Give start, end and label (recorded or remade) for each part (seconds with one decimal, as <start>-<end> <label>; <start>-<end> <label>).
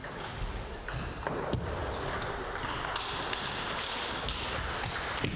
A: 0.0-1.1 recorded; 1.1-1.8 remade; 1.8-5.0 recorded; 5.0-5.4 remade